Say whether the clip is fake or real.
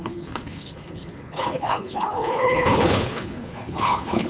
fake